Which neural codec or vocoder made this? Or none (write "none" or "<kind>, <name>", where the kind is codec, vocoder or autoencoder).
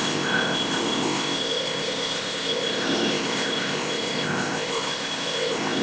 codec, ZipCodec